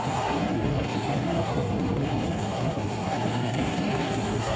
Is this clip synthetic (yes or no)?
yes